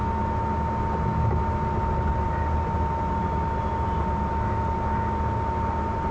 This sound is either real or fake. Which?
real